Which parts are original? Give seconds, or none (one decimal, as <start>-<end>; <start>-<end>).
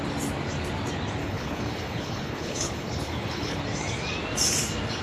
0.0-1.2; 3.6-5.0